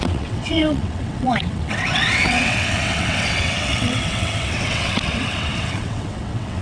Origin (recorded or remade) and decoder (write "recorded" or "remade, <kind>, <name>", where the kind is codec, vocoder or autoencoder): remade, vocoder, WaveNeXt